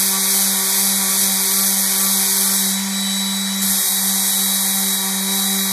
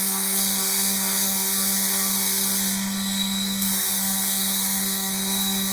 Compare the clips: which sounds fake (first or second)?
second